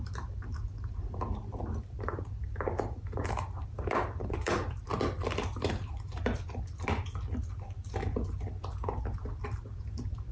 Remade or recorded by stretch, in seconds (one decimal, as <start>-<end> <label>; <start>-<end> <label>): 0.0-4.9 remade; 4.9-9.4 recorded; 9.4-10.3 remade